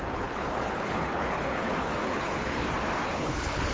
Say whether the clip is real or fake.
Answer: fake